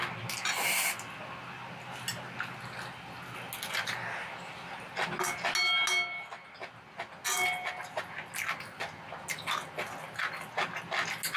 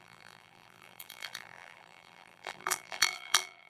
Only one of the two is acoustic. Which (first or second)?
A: first